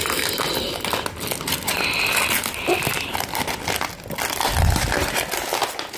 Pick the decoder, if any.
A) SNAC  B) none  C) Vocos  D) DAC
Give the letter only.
B